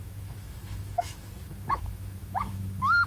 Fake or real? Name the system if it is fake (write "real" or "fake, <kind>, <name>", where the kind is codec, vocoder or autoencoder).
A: fake, autoencoder, DAC-VAE